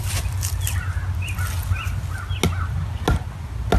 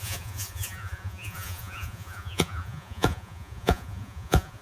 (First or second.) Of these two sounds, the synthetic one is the second